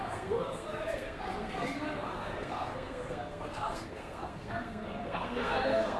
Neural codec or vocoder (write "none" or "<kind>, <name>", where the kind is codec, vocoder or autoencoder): codec, SNAC